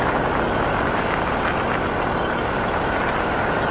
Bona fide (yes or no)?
yes